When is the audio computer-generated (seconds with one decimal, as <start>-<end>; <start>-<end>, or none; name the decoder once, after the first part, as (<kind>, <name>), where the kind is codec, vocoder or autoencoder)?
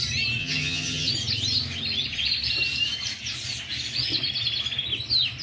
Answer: 0.4-1.1 (vocoder, HiFi-GAN)